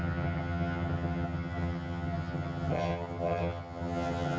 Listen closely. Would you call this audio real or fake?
fake